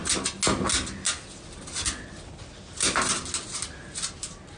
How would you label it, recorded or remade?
recorded